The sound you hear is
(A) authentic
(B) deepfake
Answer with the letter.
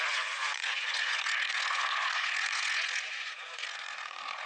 B